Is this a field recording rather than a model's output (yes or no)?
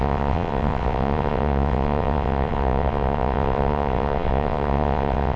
no